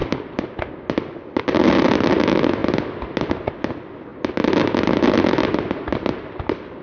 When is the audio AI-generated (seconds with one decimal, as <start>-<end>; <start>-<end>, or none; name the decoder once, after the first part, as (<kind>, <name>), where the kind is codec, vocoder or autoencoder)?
none